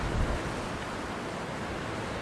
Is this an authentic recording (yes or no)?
yes